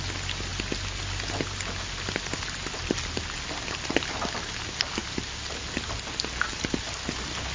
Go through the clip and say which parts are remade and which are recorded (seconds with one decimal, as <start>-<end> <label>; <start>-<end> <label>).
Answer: 0.0-7.5 recorded